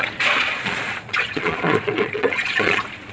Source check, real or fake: fake